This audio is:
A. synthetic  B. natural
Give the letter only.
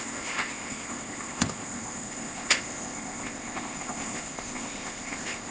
A